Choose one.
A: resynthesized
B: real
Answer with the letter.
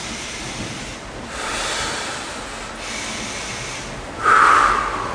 A